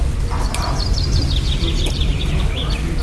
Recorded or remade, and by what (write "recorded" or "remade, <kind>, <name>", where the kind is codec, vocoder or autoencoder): recorded